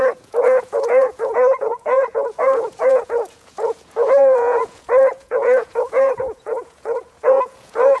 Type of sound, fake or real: fake